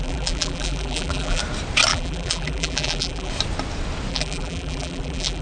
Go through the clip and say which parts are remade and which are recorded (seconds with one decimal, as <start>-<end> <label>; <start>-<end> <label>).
0.0-1.4 remade; 1.4-1.9 recorded; 1.9-3.3 remade; 3.3-4.1 recorded; 4.1-5.4 remade